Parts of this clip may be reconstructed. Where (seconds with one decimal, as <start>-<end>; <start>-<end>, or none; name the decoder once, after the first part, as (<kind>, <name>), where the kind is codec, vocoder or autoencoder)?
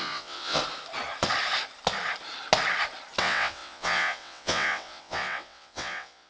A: 0.0-0.6 (vocoder, WaveNeXt); 3.2-6.3